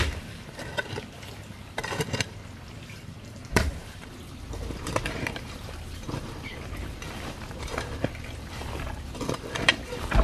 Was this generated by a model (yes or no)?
yes